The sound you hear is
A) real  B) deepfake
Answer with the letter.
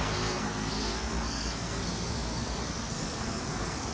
B